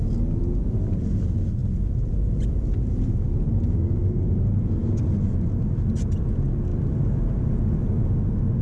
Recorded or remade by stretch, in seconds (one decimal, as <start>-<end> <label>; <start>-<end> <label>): 0.0-8.6 recorded